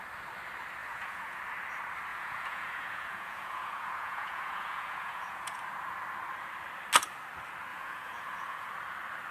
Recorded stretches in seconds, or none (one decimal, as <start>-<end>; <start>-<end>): 0.0-0.8; 1.4-2.1; 5.6-7.7; 8.7-9.3